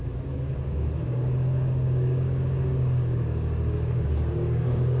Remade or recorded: remade